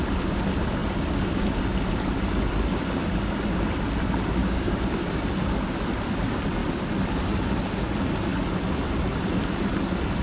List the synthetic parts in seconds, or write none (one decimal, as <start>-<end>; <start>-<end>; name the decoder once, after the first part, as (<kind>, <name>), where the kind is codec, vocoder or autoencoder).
4.4-5.2 (codec, DAC)